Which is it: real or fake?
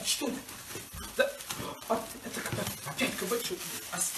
real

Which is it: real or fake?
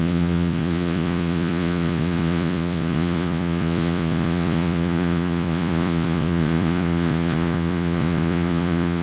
fake